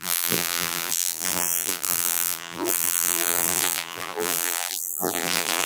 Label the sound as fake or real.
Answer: fake